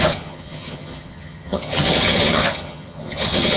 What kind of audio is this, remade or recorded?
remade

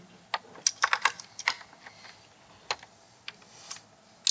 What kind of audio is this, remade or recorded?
recorded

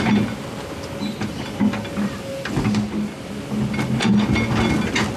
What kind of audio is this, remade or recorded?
recorded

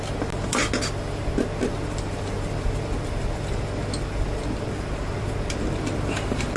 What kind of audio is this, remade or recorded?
recorded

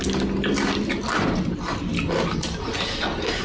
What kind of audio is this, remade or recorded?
recorded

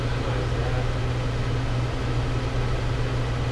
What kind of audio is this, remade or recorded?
recorded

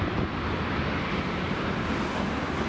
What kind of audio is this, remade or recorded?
recorded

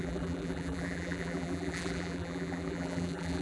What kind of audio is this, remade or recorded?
remade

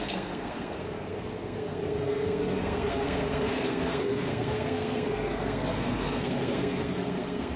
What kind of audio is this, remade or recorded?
remade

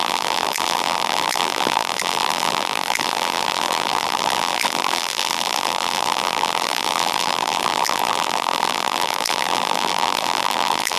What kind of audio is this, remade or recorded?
remade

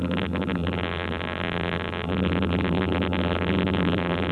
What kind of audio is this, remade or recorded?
remade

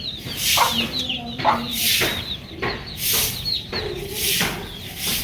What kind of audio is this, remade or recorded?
recorded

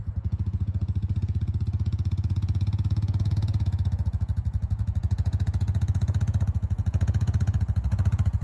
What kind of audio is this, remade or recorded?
remade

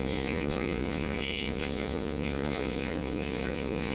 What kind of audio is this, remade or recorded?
remade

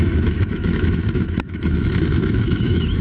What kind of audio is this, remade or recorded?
remade